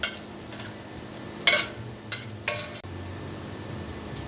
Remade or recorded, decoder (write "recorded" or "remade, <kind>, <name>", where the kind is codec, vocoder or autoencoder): recorded